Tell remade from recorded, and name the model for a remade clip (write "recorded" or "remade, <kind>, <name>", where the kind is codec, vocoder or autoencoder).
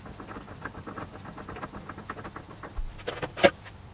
recorded